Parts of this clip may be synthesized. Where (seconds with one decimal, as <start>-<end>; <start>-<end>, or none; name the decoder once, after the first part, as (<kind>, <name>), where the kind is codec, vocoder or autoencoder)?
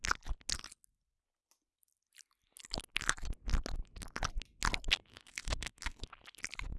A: 5.1-6.0 (codec, SNAC)